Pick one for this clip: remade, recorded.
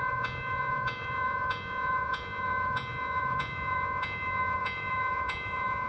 remade